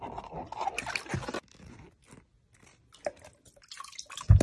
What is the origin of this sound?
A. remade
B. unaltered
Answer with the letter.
B